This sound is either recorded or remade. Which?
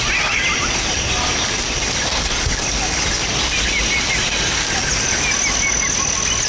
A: recorded